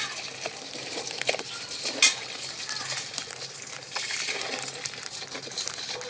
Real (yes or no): yes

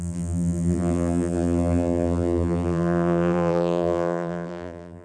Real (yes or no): no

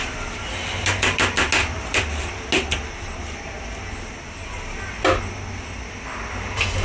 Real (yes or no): yes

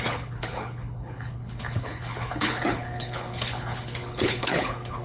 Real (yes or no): no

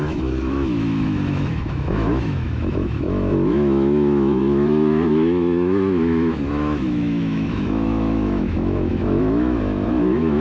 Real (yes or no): no